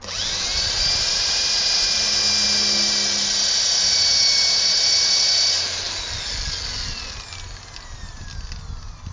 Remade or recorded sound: recorded